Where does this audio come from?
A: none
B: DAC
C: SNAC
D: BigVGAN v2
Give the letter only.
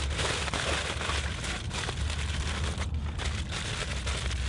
A